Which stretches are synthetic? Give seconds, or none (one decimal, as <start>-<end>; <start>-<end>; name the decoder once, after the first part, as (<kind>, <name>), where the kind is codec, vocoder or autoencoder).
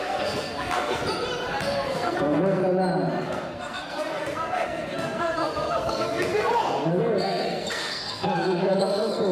0.0-1.0 (codec, SNAC); 1.6-2.6; 3.2-9.3